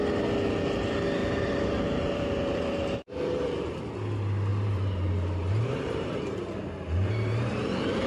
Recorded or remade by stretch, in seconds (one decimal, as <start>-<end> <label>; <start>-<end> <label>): 0.0-1.2 recorded; 1.2-3.8 remade; 3.8-4.5 recorded; 4.5-8.1 remade